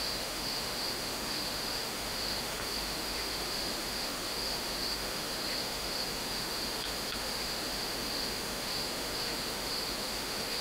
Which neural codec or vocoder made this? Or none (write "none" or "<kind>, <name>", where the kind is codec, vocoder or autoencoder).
autoencoder, DAC-VAE